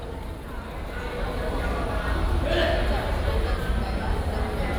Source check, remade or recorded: recorded